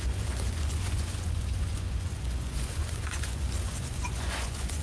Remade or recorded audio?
remade